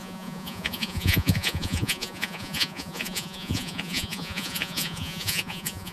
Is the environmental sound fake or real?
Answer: fake